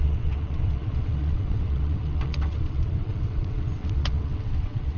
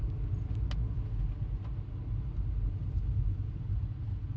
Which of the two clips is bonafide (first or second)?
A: second